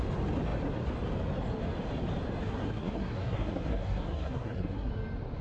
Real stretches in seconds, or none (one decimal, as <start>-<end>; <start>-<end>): 0.0-2.4; 4.9-5.4